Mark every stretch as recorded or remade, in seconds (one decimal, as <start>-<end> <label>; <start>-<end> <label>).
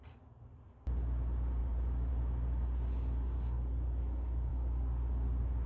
0.0-1.6 recorded; 1.6-2.1 remade; 2.1-5.7 recorded